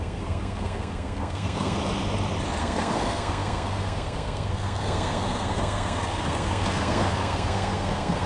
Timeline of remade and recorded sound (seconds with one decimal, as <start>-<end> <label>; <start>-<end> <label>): 0.0-1.8 remade; 1.8-2.6 recorded; 2.6-8.3 remade